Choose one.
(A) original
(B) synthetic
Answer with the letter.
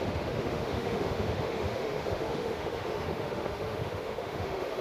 B